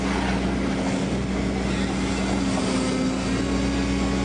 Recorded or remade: recorded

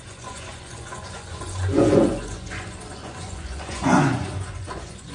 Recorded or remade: remade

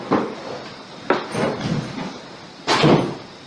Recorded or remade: recorded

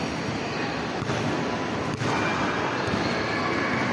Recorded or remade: recorded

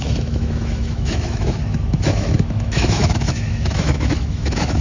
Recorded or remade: remade